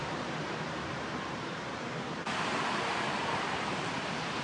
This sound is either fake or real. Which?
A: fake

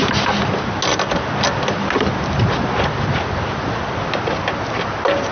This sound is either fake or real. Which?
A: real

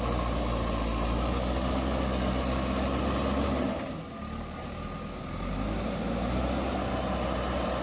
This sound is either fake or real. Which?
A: real